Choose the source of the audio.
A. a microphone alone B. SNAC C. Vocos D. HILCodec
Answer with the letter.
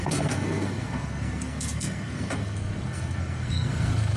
B